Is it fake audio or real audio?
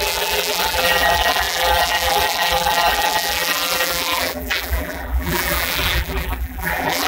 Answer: fake